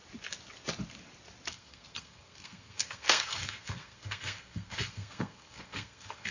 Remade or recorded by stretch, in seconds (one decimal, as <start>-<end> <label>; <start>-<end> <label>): 0.0-1.5 recorded; 1.5-6.3 remade